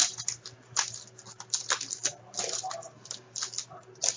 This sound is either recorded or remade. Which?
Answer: recorded